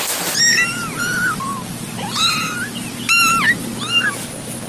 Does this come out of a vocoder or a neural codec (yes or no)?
no